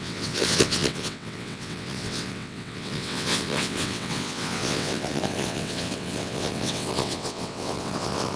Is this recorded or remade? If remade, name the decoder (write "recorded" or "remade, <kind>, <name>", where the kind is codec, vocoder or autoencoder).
remade, vocoder, WaveNeXt